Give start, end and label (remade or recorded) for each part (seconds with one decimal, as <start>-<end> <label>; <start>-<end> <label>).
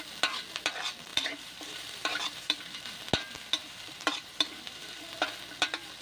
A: 0.0-1.1 recorded; 1.1-3.0 remade; 3.0-3.6 recorded; 3.6-5.0 remade; 5.0-6.0 recorded